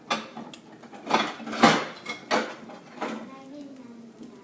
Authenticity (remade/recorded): recorded